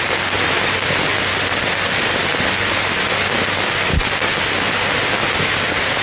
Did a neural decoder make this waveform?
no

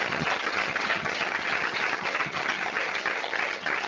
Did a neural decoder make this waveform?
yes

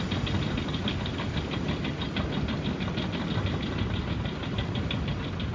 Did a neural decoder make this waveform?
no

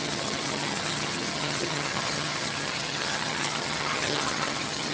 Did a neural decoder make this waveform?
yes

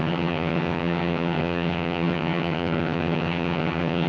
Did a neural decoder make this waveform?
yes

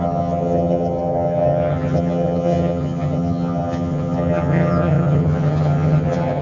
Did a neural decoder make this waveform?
yes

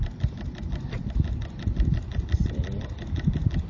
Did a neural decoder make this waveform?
no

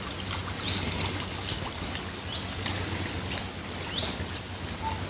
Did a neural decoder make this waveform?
no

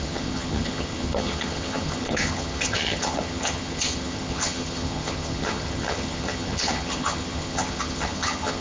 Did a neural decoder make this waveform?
yes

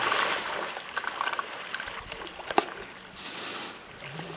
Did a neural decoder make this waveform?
no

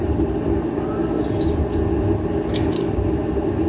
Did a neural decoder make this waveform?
no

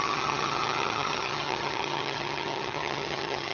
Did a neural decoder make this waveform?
yes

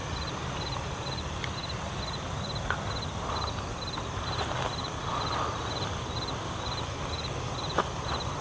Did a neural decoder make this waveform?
no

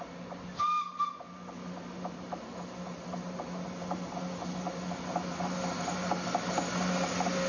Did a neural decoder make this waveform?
no